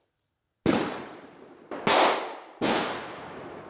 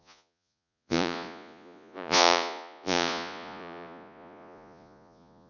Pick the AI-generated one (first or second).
second